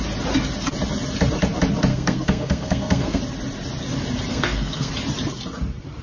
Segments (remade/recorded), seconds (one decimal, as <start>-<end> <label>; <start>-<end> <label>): 0.0-1.9 recorded; 1.9-3.2 remade; 3.2-4.3 recorded; 4.3-4.9 remade; 4.9-6.0 recorded